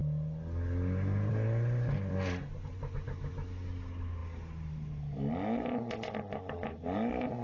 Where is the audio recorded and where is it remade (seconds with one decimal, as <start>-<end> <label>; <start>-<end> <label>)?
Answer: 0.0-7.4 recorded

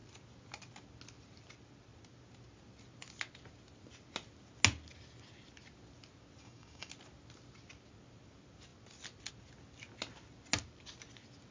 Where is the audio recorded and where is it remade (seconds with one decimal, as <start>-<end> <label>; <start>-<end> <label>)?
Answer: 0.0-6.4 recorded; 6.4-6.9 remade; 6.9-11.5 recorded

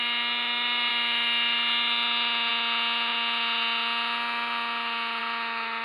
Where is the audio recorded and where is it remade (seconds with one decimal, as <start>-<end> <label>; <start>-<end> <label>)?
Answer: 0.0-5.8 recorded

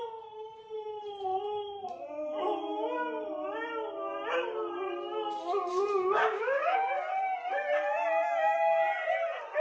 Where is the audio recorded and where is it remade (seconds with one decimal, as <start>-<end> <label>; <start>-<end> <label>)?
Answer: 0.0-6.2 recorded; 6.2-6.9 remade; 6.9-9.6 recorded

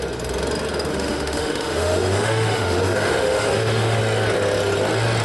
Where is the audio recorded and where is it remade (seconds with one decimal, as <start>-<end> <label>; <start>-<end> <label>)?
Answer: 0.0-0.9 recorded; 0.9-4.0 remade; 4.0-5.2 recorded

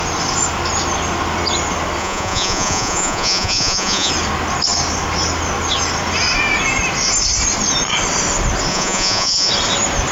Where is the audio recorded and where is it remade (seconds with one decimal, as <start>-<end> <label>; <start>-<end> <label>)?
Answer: 0.0-2.0 recorded; 2.0-4.1 remade; 4.1-8.7 recorded; 8.7-9.5 remade; 9.5-10.1 recorded